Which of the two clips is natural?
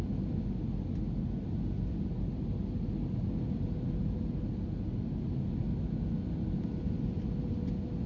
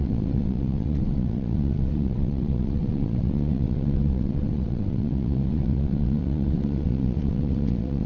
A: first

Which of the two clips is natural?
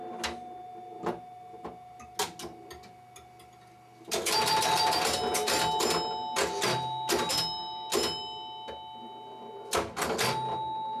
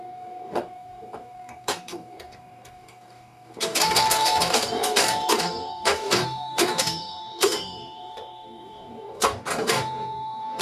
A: first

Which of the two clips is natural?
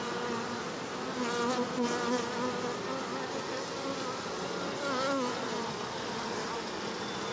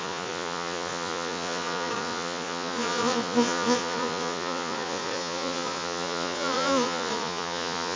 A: first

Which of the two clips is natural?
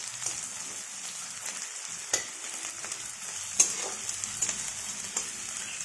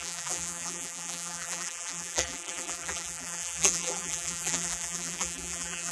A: first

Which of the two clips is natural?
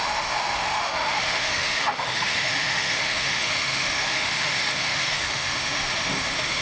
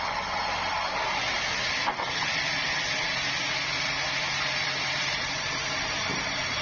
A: second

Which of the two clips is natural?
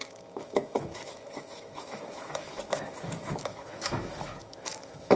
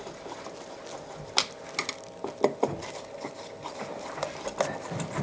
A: second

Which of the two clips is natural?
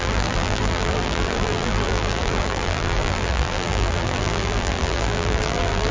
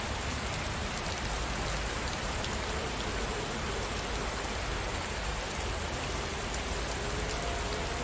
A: second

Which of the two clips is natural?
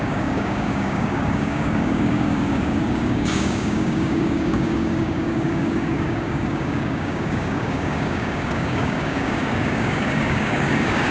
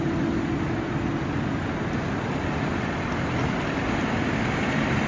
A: second